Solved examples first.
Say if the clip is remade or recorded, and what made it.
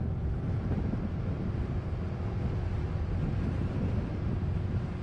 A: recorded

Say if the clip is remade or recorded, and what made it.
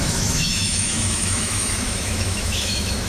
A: remade, autoencoder, DAC-VAE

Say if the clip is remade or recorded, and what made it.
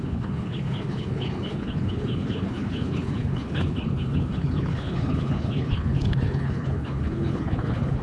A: remade, codec, HILCodec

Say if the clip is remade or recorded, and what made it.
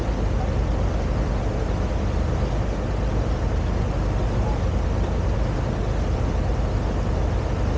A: recorded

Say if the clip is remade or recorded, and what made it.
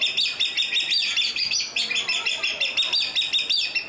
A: recorded